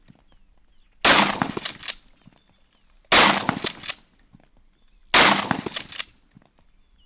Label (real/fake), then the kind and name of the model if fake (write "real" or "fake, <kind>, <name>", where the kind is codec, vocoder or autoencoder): real